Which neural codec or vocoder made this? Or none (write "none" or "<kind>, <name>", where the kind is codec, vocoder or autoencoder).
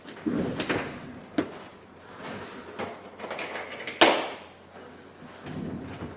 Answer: none